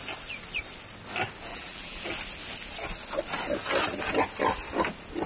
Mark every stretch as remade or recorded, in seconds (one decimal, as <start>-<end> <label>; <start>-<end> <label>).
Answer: 0.0-1.5 recorded; 1.5-2.0 remade; 2.0-5.3 recorded

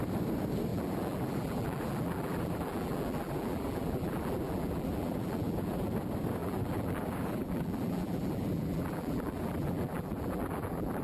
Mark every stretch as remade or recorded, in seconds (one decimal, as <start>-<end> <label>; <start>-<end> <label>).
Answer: 0.0-0.7 recorded; 0.7-5.9 remade; 5.9-6.4 recorded; 6.4-11.0 remade

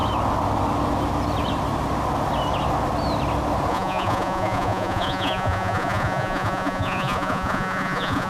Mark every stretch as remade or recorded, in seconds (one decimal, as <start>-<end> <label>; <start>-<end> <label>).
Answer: 0.0-3.7 recorded; 3.7-8.3 remade

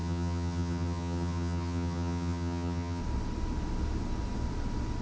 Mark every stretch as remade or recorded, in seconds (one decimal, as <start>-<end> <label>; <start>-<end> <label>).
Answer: 0.0-3.0 remade; 3.0-5.0 recorded

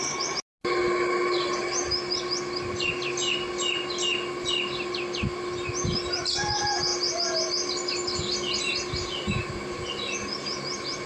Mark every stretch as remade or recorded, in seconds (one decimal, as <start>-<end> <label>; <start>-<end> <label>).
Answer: 0.0-11.1 recorded

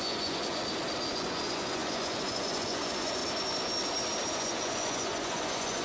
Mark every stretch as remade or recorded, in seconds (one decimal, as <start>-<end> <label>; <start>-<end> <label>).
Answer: 0.0-0.6 remade; 0.6-1.1 recorded; 1.1-3.2 remade; 3.2-4.3 recorded; 4.3-5.8 remade

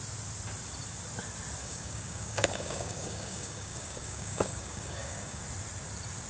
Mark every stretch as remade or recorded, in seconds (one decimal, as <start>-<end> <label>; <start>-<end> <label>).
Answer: 0.0-1.6 recorded; 1.6-5.4 remade; 5.4-6.3 recorded

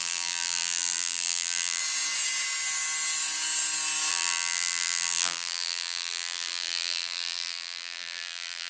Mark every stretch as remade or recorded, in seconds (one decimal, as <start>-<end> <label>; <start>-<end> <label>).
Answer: 0.0-1.8 remade; 1.8-4.1 recorded; 4.1-8.7 remade